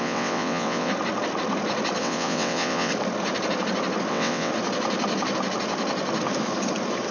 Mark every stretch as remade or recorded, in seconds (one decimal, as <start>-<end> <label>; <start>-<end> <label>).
0.0-0.9 remade; 0.9-2.0 recorded; 2.0-2.9 remade; 2.9-4.1 recorded; 4.1-4.5 remade; 4.5-7.1 recorded